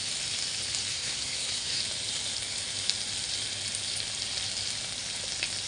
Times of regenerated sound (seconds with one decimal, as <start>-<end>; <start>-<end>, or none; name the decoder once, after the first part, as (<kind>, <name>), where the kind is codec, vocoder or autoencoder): 0.9-1.8 (codec, SNAC)